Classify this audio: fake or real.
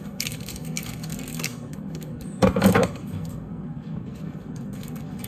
fake